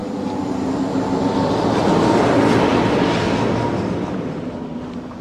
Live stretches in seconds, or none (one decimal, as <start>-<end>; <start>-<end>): 0.0-5.2